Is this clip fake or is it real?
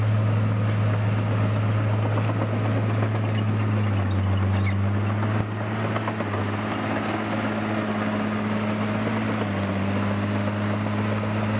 real